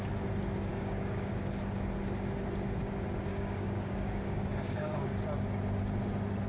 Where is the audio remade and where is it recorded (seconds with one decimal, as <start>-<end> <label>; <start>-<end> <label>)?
0.0-0.7 recorded; 0.7-1.3 remade; 1.3-3.3 recorded; 3.3-5.1 remade; 5.1-6.5 recorded